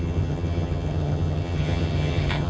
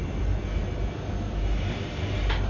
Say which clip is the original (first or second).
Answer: second